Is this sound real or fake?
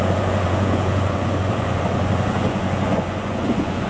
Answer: fake